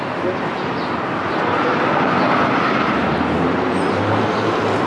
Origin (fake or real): real